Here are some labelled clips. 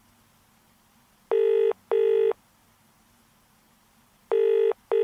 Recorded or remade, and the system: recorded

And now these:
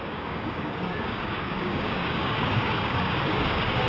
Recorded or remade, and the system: remade, codec, DAC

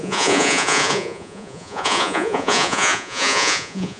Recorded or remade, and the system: remade, vocoder, Vocos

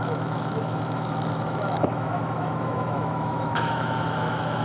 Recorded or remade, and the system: remade, autoencoder, DAC-VAE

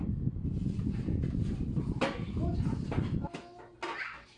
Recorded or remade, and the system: recorded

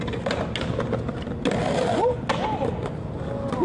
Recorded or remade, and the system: recorded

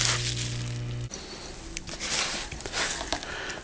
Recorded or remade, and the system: recorded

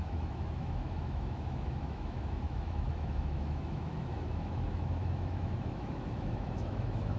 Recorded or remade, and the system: remade, autoencoder, DAC-VAE